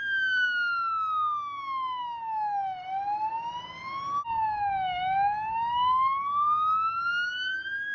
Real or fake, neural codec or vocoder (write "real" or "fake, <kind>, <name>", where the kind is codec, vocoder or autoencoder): real